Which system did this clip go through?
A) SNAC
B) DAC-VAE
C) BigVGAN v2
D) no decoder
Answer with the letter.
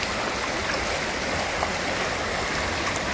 D